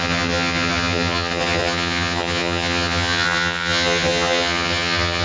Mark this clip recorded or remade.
remade